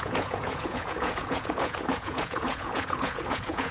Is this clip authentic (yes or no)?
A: no